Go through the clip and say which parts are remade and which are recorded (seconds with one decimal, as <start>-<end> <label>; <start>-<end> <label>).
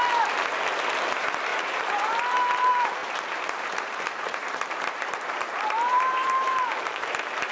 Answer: 0.0-1.5 recorded; 1.5-2.0 remade; 2.0-3.0 recorded; 3.0-7.5 remade